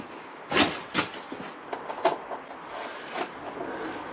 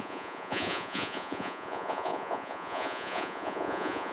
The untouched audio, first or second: first